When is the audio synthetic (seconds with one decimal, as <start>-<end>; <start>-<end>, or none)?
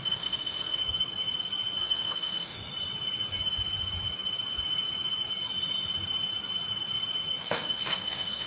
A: 0.0-0.8; 1.8-2.6; 7.4-8.5